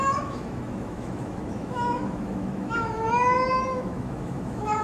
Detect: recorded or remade remade